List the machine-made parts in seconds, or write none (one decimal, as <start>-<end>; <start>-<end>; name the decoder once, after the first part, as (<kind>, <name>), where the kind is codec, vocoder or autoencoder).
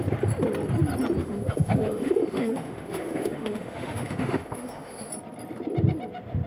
1.2-5.1 (autoencoder, DAC-VAE)